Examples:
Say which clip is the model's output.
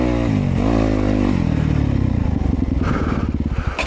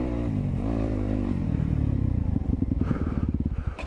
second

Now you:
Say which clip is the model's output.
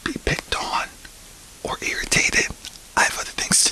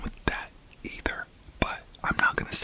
second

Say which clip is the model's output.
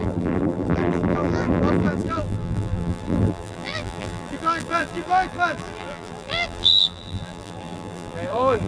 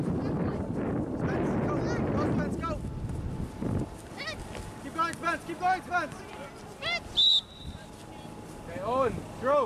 first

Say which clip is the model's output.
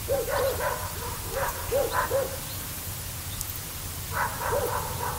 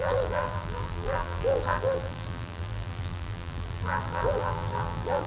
second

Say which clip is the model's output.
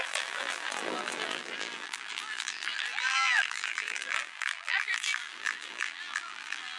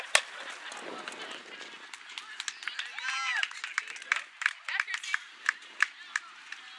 first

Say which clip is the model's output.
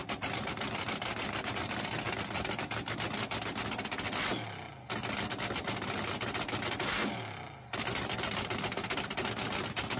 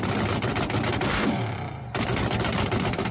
second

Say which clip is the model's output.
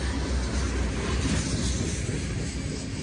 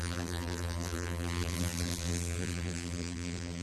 second